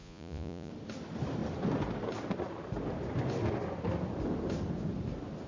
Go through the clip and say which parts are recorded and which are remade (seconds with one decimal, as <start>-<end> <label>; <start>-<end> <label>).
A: 0.0-0.7 remade; 0.7-5.5 recorded